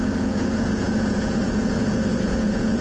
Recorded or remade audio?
remade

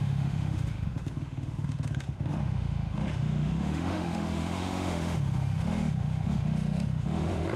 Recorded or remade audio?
remade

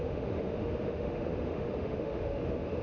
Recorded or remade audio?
remade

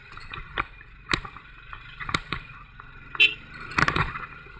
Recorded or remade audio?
recorded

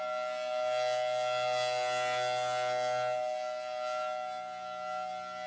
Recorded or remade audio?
recorded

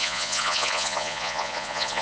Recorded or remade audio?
remade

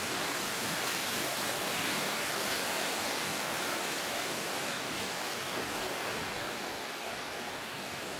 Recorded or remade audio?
remade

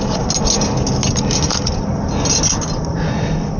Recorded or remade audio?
recorded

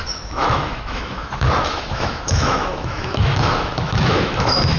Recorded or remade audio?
remade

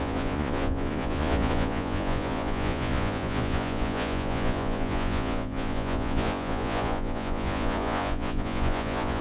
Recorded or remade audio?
remade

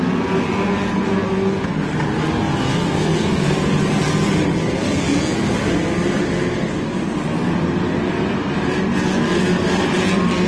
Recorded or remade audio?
recorded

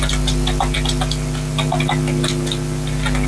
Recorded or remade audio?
recorded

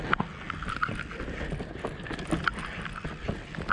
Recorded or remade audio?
recorded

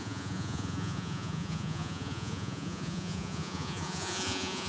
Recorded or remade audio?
remade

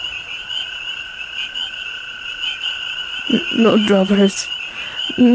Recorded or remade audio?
remade